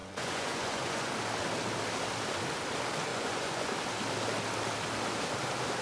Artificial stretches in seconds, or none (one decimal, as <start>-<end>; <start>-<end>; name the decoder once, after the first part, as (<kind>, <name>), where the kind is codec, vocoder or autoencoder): 0.0-1.1 (vocoder, Vocos); 3.1-3.7